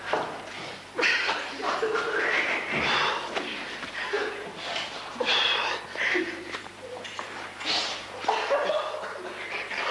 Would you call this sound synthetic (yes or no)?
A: no